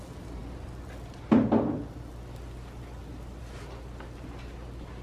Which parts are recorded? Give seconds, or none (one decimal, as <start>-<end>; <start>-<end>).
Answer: 0.0-5.0